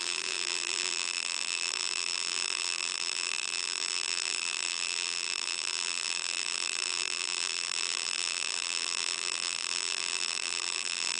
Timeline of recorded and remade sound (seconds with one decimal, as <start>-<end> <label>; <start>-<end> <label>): 0.0-11.2 remade